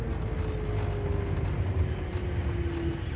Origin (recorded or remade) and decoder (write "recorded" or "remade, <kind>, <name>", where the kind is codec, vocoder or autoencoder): recorded